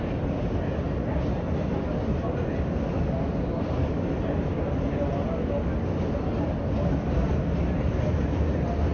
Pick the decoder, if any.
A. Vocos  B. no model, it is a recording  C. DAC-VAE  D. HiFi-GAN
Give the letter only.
B